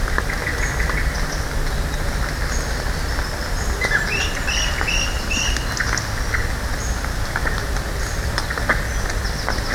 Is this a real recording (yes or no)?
yes